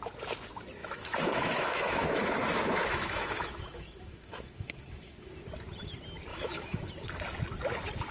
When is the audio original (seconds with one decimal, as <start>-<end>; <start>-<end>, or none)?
0.0-0.8; 5.3-6.3; 6.9-8.1